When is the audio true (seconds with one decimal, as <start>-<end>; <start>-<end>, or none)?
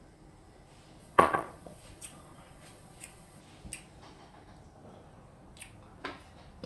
0.0-1.0; 3.4-6.7